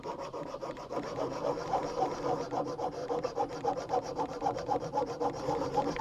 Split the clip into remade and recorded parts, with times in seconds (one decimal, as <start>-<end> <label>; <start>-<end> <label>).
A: 0.0-3.0 recorded; 3.0-6.0 remade